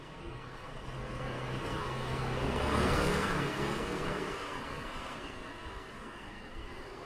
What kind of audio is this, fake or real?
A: fake